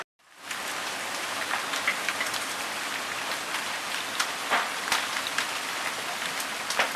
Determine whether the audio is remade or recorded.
recorded